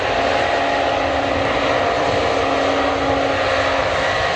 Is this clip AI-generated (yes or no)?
no